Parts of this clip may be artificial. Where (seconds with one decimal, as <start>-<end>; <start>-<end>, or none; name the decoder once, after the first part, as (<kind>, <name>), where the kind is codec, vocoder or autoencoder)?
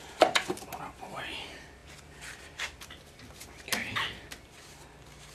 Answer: none